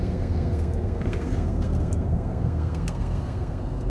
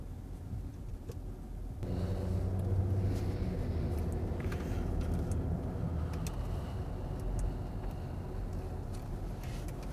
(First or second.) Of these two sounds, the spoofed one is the first